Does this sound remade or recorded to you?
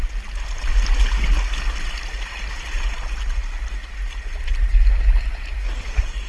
recorded